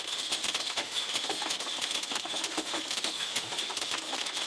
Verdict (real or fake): fake